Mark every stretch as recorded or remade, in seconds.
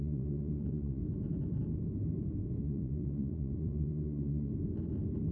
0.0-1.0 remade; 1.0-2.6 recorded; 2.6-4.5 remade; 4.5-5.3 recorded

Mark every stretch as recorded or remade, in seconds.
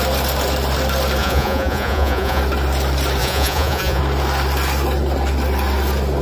0.0-1.2 recorded; 1.2-2.4 remade; 2.4-3.2 recorded; 3.2-4.0 remade; 4.0-6.2 recorded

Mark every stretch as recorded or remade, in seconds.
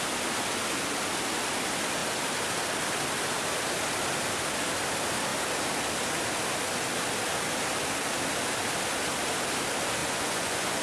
0.0-10.0 recorded; 10.0-10.8 remade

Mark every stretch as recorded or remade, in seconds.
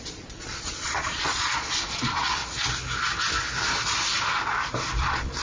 0.0-2.4 remade; 2.4-5.0 recorded; 5.0-5.4 remade